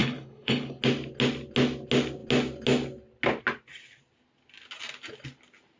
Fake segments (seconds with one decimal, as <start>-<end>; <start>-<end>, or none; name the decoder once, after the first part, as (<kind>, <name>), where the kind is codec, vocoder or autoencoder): 0.0-0.8 (codec, HILCodec)